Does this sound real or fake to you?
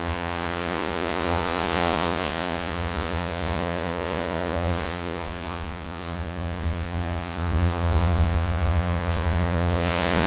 fake